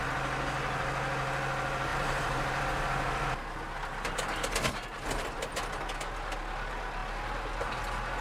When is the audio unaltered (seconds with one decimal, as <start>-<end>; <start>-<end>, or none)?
0.0-1.9; 2.6-3.9; 4.5-8.2